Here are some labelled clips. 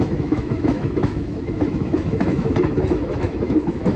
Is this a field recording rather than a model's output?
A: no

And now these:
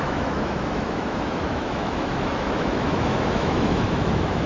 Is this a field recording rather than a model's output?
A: no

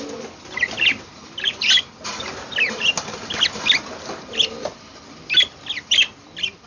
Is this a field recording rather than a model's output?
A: yes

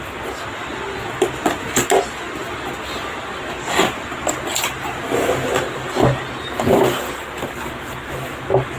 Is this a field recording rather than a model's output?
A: yes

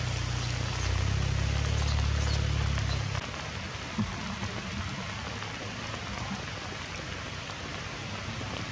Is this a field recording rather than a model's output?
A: yes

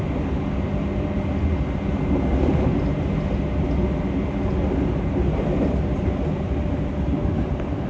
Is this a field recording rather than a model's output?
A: yes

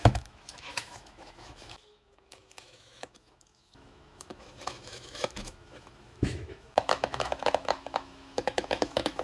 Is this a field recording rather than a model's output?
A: no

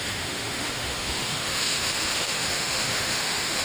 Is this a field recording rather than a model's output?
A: no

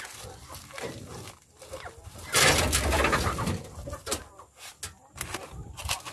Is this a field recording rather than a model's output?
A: yes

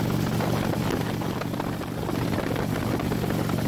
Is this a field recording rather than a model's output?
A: yes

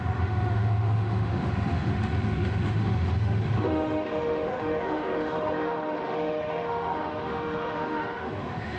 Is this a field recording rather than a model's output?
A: no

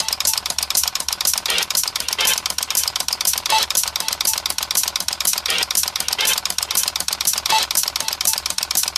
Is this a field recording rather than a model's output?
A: yes